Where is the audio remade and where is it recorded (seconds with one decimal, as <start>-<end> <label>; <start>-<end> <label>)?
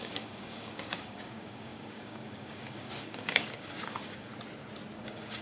0.0-4.3 remade; 4.3-5.0 recorded; 5.0-5.4 remade